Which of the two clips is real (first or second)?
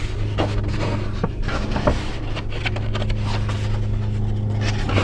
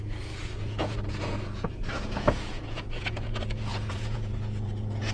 first